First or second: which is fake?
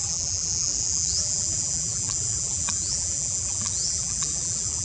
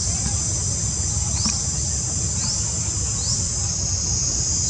first